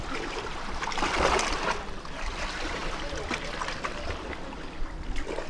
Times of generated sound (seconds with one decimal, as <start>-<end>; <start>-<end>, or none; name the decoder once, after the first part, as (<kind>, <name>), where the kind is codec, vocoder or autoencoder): none